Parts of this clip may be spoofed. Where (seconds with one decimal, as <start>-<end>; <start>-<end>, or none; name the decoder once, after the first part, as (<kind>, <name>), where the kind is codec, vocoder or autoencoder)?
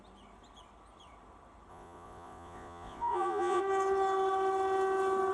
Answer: 1.7-3.6 (vocoder, Vocos)